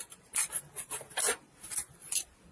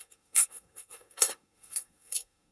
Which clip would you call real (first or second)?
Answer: first